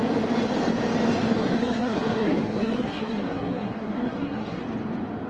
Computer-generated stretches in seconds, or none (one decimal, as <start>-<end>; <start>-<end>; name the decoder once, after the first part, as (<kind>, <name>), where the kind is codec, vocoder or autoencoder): 1.4-4.6 (codec, SNAC)